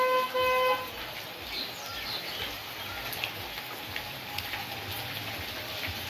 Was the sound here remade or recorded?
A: recorded